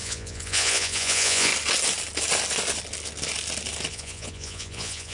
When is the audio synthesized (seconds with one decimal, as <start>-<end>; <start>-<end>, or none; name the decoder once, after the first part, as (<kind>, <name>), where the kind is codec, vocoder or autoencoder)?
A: 0.0-1.5 (vocoder, Vocos); 3.9-5.1